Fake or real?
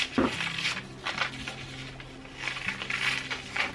real